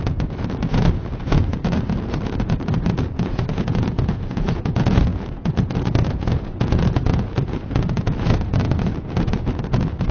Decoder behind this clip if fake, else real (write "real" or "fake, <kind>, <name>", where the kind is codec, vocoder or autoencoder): fake, vocoder, Vocos